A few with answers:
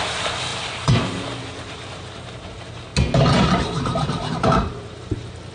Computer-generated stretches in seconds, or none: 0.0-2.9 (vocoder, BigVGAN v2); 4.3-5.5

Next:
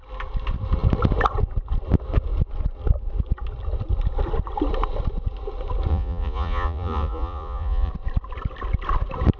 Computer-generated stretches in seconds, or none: 5.9-7.9 (vocoder, Vocos)

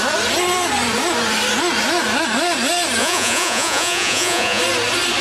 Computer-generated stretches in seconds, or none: 3.0-4.6 (vocoder, Vocos)

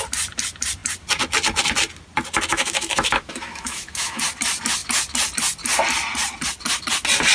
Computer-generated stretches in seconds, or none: 2.5-4.2 (autoencoder, DAC-VAE)

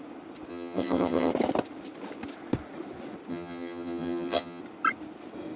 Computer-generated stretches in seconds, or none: 0.5-1.3 (vocoder, HiFi-GAN); 3.3-4.6